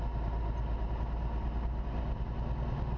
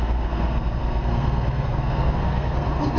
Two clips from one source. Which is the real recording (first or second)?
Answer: first